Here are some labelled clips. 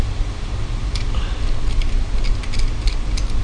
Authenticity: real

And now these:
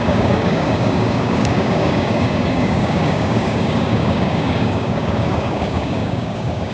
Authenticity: fake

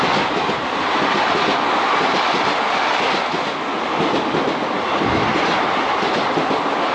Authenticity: real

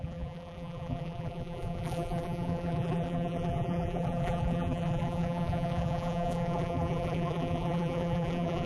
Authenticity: fake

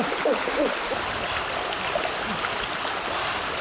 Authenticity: real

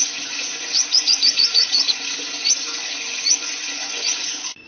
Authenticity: fake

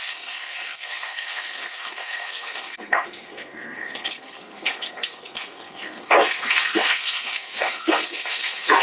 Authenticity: fake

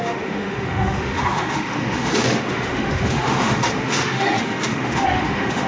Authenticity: fake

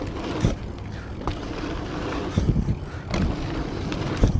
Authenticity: real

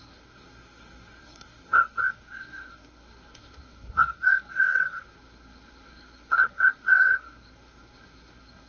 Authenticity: fake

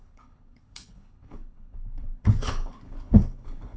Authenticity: fake